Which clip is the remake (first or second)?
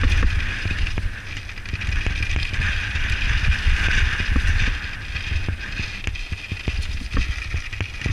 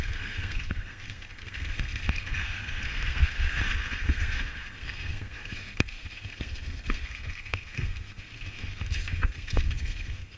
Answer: second